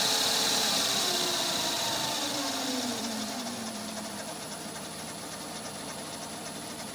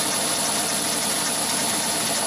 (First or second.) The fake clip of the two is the first